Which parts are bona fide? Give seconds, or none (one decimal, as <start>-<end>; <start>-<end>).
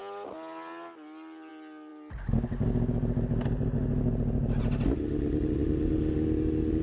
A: 0.0-6.8